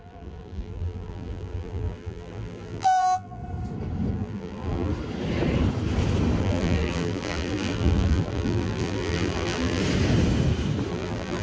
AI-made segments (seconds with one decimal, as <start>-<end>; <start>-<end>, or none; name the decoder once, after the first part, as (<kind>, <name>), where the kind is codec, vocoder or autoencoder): 0.0-3.4 (vocoder, BigVGAN v2); 4.1-4.9; 6.4-9.8; 10.9-11.4